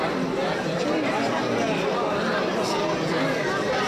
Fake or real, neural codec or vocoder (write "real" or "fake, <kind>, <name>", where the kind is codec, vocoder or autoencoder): real